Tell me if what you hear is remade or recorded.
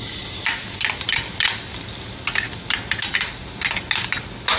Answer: recorded